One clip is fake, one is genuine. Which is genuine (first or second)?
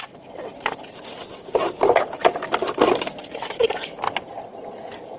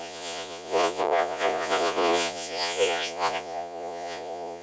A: first